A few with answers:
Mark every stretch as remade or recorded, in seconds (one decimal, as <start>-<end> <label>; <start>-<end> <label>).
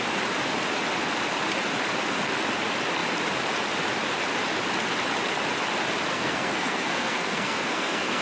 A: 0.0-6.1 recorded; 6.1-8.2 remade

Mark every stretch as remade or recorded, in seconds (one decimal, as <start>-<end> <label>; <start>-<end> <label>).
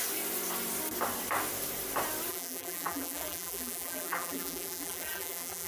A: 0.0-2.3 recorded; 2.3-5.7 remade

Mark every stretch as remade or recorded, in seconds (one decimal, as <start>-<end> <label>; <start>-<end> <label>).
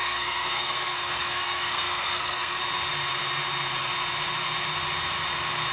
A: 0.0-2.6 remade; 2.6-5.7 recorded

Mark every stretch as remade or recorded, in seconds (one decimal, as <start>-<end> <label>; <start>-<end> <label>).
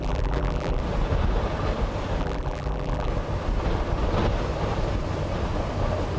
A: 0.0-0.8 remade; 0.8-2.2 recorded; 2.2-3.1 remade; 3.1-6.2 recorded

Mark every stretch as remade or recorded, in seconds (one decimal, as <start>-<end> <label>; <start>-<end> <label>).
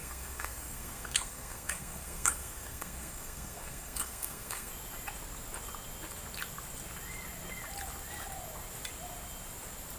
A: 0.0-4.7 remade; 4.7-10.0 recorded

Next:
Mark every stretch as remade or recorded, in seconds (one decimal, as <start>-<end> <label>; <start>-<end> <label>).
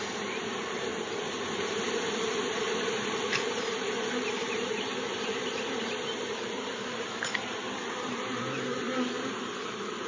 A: 0.0-0.9 remade; 0.9-1.5 recorded; 1.5-10.1 remade